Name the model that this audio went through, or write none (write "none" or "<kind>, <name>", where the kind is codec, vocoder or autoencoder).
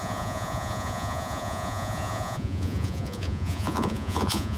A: vocoder, Vocos